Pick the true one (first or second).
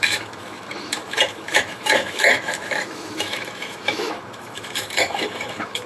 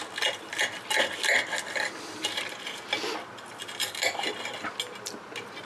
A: second